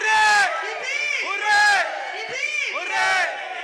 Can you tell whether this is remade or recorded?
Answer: recorded